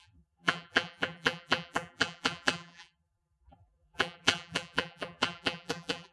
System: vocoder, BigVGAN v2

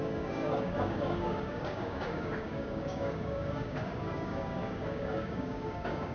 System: codec, DAC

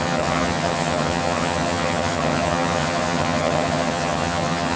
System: vocoder, HiFi-GAN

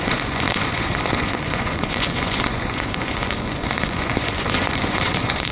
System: vocoder, Vocos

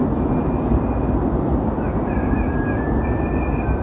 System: none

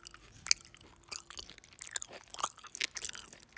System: none